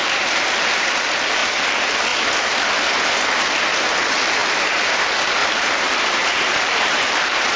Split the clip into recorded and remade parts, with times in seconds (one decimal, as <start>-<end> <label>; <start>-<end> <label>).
0.0-4.4 recorded; 4.4-7.6 remade